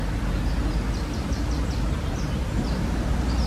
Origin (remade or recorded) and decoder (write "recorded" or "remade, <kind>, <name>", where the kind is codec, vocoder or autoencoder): recorded